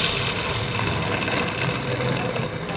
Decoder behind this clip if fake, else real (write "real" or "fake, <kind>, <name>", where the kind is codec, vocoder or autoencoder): real